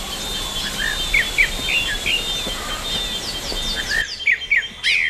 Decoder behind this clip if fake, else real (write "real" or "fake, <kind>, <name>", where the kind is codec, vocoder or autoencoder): real